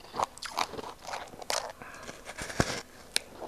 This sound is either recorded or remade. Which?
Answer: recorded